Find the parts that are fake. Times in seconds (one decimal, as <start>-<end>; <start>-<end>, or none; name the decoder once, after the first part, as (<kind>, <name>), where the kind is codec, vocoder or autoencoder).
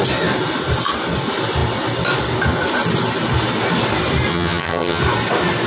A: 4.3-5.0 (vocoder, HiFi-GAN)